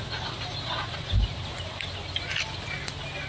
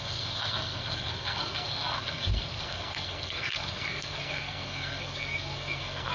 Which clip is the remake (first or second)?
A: second